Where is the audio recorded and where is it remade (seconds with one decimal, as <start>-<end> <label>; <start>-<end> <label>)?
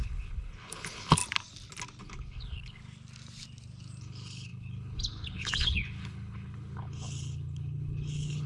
0.0-1.2 remade; 1.2-2.0 recorded; 2.0-2.8 remade; 2.8-4.0 recorded; 4.0-8.5 remade